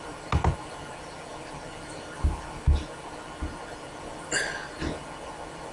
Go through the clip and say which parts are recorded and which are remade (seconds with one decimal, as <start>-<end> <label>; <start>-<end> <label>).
0.0-5.7 recorded